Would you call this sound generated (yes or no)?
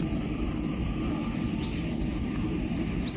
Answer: no